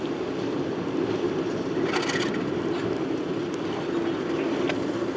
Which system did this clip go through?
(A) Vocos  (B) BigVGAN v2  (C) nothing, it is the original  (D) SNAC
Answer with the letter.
C